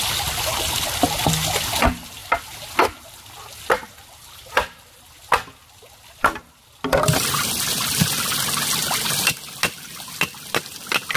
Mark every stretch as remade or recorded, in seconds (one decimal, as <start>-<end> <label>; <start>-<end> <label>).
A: 0.0-11.2 recorded